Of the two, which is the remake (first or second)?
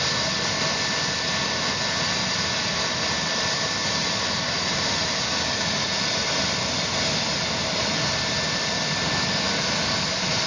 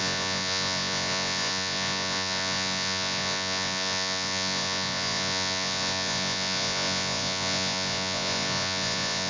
second